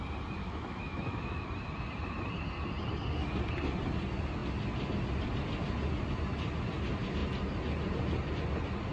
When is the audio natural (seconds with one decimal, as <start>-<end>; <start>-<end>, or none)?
0.0-0.4; 1.5-8.9